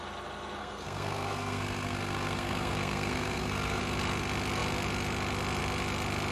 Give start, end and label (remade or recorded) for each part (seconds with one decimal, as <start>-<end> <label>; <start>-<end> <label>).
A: 0.0-0.6 recorded; 0.6-3.8 remade; 3.8-6.3 recorded